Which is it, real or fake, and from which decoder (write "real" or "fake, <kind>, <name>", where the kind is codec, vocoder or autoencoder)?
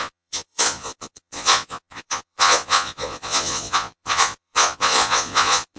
fake, vocoder, Vocos